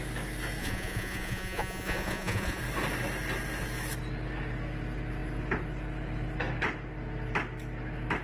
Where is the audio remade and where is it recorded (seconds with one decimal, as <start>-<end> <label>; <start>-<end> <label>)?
0.0-0.6 recorded; 0.6-2.6 remade; 2.6-8.2 recorded